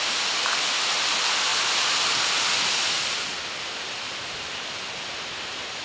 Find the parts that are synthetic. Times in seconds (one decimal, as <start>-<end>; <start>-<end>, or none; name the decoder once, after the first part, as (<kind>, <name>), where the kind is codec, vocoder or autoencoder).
none